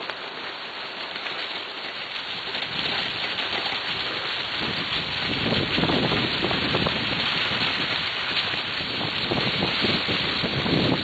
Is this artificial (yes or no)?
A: no